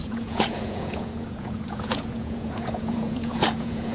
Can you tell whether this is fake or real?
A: fake